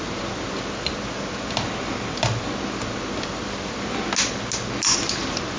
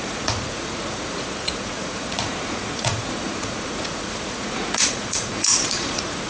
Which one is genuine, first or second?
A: first